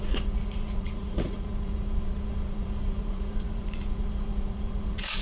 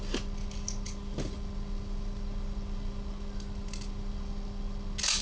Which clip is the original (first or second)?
second